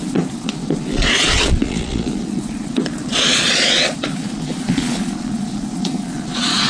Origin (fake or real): fake